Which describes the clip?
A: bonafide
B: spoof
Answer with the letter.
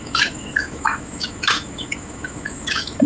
B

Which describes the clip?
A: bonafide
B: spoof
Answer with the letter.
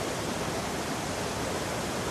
A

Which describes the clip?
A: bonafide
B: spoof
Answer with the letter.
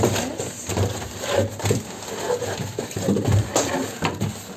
A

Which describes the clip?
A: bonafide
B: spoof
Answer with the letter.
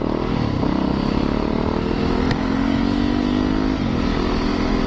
A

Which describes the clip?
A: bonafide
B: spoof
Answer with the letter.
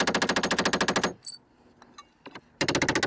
A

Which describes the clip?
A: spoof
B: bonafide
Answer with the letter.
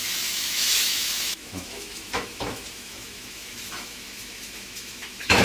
A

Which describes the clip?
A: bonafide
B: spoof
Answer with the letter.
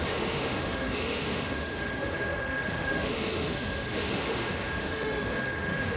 B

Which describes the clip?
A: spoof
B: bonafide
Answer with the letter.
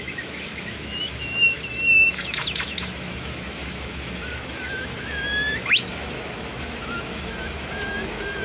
A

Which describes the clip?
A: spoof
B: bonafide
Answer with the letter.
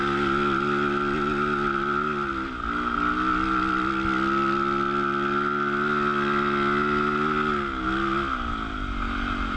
B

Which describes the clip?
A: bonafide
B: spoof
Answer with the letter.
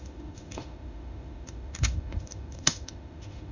B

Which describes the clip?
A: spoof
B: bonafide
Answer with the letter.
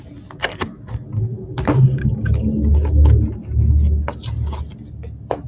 B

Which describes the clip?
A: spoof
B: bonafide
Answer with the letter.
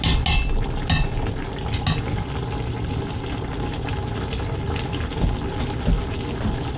B